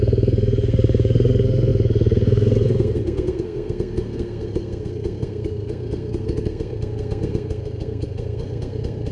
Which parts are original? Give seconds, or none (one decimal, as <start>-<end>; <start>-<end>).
none